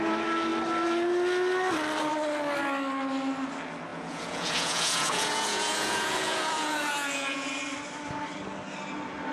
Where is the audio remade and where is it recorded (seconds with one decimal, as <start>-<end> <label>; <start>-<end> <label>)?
0.0-3.9 recorded; 3.9-7.6 remade; 7.6-9.3 recorded